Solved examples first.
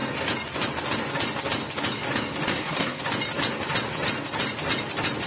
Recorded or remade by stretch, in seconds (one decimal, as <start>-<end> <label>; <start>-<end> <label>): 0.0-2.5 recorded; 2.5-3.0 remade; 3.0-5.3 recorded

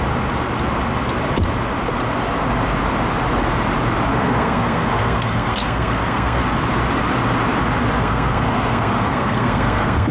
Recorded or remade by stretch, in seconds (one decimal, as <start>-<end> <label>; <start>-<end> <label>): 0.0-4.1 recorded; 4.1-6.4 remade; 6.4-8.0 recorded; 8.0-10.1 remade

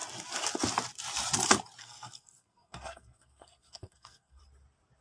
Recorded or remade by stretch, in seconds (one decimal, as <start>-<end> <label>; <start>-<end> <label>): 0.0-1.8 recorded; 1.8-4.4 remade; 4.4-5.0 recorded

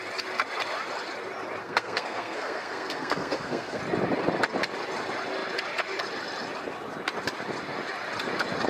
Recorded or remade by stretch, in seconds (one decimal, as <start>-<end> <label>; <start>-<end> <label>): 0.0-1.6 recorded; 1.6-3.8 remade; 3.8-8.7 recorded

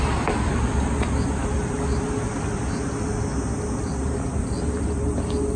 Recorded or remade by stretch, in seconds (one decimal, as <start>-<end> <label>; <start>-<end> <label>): 0.0-5.6 recorded